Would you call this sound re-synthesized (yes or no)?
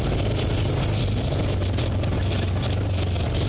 yes